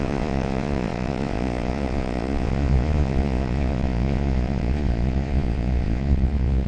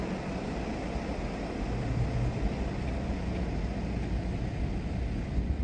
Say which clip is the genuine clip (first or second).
second